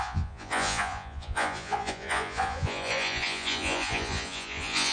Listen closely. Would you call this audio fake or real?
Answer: fake